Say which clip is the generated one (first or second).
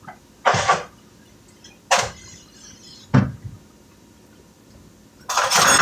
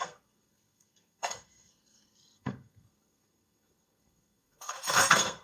second